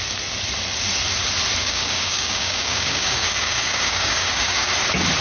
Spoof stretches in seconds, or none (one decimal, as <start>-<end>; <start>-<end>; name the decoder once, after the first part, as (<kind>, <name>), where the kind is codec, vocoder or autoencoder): 1.6-4.7 (codec, DAC)

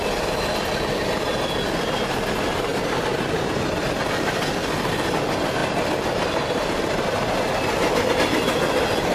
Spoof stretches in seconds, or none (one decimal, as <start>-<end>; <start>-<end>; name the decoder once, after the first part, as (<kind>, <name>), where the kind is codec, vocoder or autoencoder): none

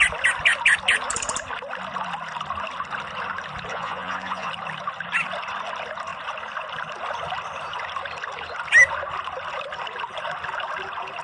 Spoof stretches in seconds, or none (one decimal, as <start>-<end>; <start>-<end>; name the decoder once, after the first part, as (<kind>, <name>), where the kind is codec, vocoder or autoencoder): 3.7-4.5 (vocoder, Vocos)